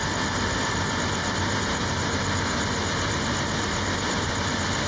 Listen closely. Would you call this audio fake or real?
fake